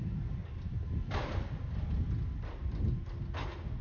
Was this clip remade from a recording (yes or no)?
no